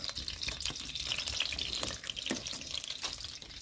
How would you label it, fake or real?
real